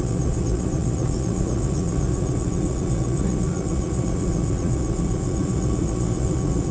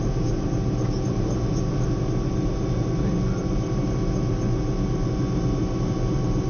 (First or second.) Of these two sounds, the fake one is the first